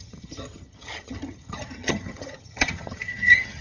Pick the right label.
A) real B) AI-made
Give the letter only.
B